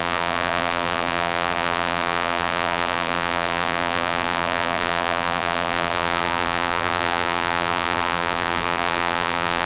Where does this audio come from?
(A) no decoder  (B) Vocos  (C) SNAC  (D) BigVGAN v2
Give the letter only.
D